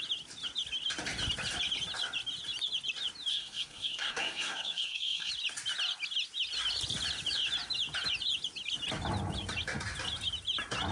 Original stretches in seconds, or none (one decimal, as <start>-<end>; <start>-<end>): 0.0-3.3; 5.3-10.9